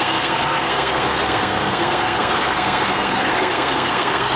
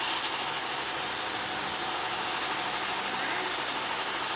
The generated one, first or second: first